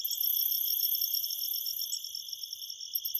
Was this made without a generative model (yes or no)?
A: yes